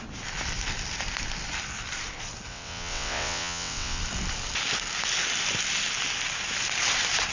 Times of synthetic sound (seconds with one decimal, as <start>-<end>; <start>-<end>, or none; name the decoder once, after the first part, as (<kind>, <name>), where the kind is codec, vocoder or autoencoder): 2.5-4.0 (vocoder, WaveNeXt)